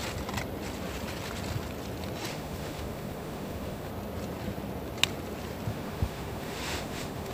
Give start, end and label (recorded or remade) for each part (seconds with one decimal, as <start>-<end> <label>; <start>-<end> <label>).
0.0-2.3 recorded; 2.3-3.9 remade; 3.9-5.7 recorded; 5.7-7.3 remade